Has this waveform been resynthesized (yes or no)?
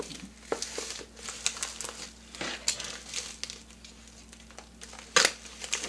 no